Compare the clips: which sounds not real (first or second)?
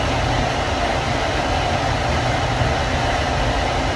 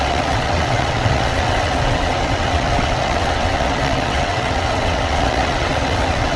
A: second